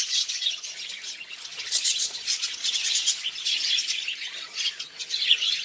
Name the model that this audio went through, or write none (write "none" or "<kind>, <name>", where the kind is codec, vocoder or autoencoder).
vocoder, Vocos